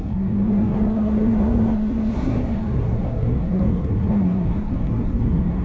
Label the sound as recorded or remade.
remade